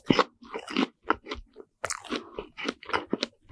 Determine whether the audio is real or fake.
real